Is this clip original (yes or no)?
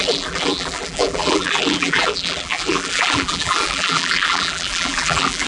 no